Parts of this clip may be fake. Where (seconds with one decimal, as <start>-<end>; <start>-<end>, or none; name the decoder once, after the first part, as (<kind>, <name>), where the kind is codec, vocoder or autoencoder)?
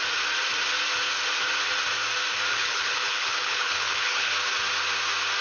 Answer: 2.5-4.3 (codec, HILCodec)